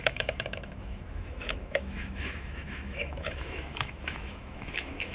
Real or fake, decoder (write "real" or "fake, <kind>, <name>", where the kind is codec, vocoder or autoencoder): fake, autoencoder, DAC-VAE